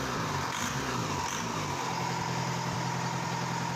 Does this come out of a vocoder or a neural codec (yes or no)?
no